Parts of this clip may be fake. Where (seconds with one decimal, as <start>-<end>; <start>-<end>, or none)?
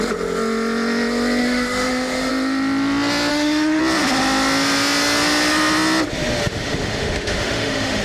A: 1.4-2.3; 3.3-3.8; 6.4-8.0